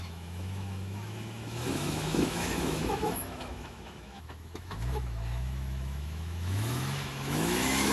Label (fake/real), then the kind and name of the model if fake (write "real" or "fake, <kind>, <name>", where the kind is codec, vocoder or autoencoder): fake, autoencoder, DAC-VAE